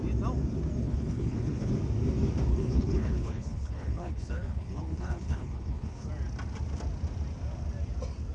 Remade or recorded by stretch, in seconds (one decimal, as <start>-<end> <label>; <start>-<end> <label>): 0.0-0.8 recorded; 0.8-1.7 remade; 1.7-2.5 recorded; 2.5-6.1 remade; 6.1-8.3 recorded